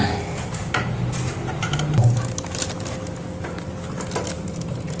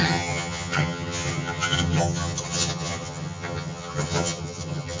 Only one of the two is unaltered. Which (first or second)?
first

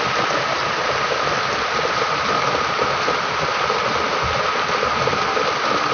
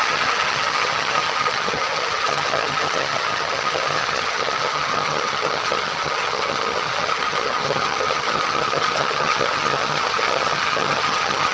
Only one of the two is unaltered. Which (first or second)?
first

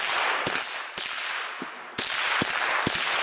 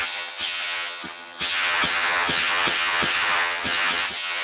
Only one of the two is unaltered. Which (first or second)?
first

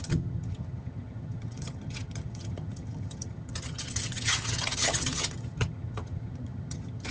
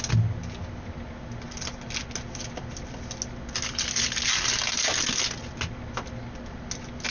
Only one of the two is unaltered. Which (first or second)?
second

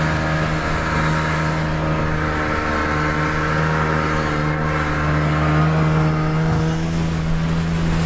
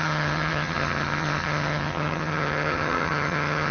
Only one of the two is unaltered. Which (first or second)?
first